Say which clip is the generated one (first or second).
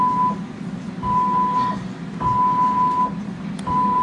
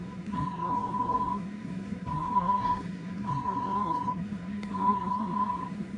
second